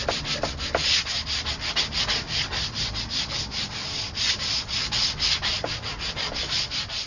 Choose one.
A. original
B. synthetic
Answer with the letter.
A